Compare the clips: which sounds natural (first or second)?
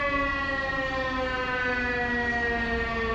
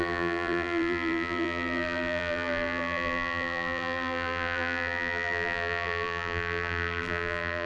first